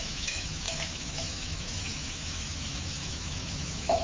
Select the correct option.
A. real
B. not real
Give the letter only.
B